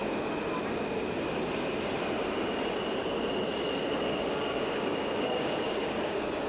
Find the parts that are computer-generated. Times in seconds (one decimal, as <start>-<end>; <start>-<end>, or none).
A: 3.9-6.5

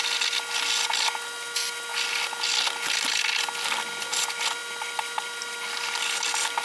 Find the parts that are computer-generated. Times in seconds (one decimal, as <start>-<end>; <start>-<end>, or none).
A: none